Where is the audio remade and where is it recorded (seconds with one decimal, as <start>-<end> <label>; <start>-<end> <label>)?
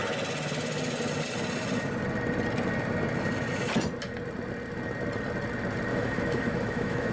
0.0-5.9 recorded; 5.9-7.1 remade